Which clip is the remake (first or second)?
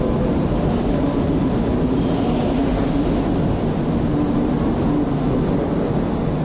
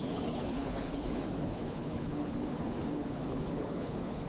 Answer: second